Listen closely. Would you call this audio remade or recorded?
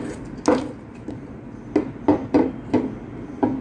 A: recorded